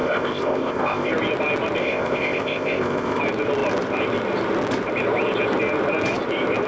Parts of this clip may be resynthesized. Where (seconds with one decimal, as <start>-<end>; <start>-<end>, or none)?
0.0-1.1; 1.8-3.2